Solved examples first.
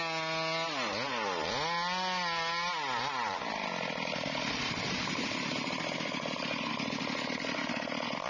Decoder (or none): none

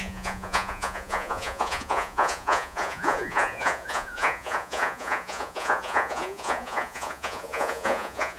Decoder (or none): vocoder, Vocos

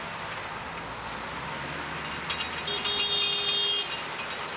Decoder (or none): none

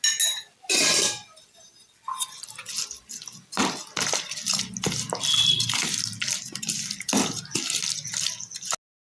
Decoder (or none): none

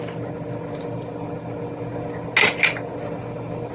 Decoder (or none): none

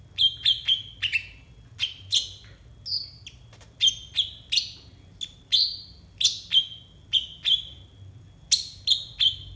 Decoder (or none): none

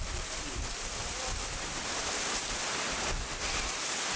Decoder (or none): none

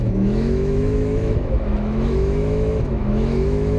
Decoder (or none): autoencoder, DAC-VAE